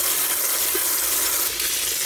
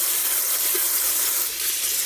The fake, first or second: second